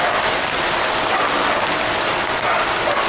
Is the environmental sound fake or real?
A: real